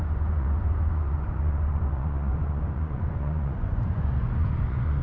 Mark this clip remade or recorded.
remade